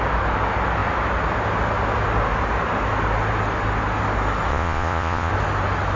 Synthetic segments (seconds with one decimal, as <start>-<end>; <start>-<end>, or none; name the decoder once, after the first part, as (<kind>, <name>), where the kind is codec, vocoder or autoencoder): 4.5-5.3 (vocoder, Vocos)